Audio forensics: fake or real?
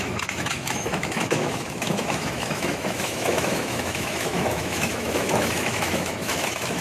fake